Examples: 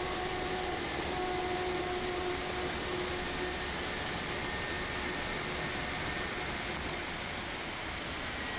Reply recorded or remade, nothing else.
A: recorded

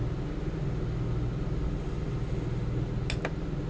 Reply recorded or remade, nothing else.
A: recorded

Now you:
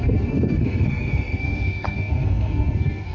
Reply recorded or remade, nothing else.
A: remade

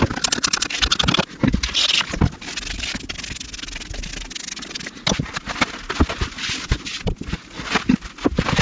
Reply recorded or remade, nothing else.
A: recorded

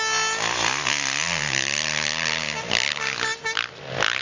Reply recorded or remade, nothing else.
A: recorded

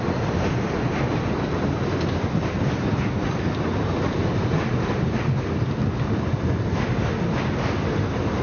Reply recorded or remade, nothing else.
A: recorded